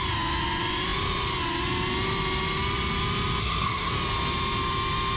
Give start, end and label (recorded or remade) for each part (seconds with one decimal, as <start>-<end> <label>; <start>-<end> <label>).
0.0-3.4 recorded; 3.4-3.9 remade; 3.9-5.2 recorded